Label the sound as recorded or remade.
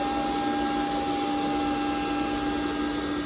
recorded